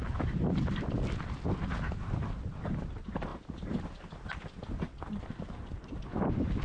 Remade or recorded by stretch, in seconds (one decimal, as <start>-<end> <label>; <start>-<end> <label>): 0.0-6.6 recorded